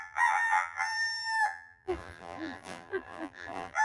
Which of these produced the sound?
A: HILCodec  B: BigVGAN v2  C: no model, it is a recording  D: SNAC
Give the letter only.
B